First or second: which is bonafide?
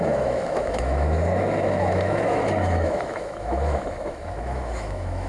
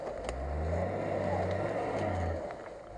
second